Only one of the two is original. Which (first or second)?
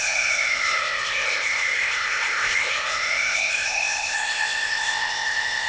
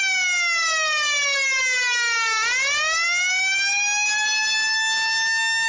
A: second